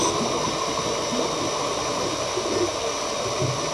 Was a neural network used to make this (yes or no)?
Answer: no